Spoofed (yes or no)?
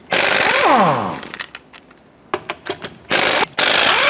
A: no